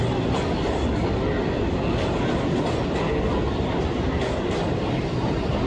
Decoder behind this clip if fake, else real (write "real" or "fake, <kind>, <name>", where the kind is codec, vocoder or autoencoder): real